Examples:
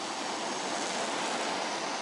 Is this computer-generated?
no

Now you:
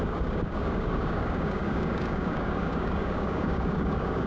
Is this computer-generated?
yes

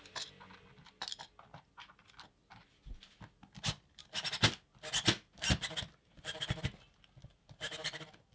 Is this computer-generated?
no